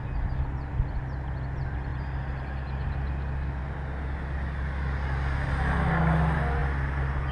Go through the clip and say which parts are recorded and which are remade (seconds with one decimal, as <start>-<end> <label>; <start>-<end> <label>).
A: 0.0-7.3 recorded